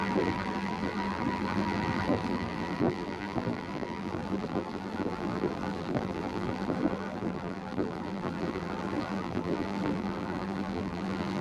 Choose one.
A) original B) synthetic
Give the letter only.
B